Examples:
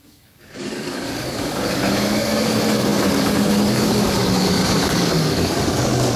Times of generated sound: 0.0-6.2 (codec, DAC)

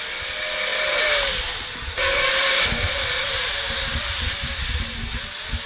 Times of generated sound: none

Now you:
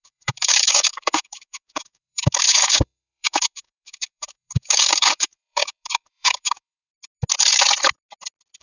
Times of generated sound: 0.0-6.9 (codec, DAC)

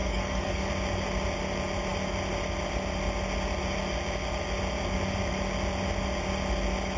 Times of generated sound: 0.0-0.7 (codec, DAC)

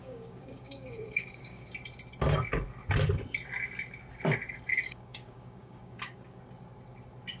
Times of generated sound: 0.0-1.7 (codec, DAC); 4.7-6.4